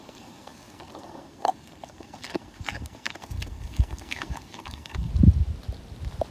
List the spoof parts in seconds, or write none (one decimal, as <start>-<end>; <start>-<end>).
0.0-5.1